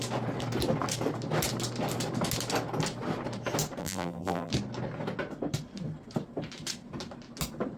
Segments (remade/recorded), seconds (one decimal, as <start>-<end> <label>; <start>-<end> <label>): 0.0-3.8 recorded; 3.8-4.5 remade; 4.5-7.8 recorded